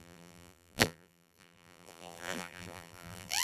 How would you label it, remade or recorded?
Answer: remade